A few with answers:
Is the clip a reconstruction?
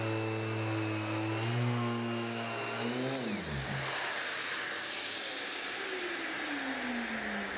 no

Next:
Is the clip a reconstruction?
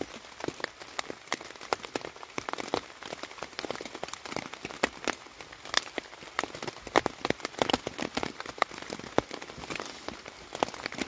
no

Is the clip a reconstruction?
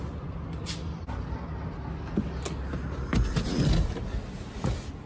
no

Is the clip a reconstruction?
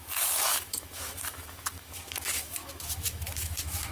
yes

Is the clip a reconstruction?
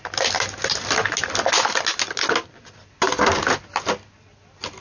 no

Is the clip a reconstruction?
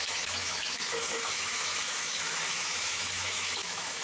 yes